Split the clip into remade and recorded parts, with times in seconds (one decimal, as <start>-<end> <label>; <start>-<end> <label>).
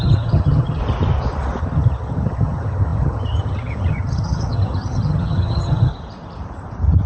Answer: 0.0-0.8 remade; 0.8-1.6 recorded; 1.6-5.9 remade; 5.9-7.1 recorded